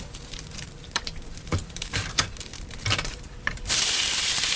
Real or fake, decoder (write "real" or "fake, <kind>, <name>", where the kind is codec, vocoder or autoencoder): fake, vocoder, BigVGAN v2